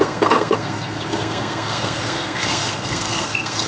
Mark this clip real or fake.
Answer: fake